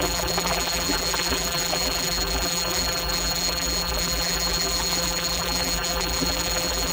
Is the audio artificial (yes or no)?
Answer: yes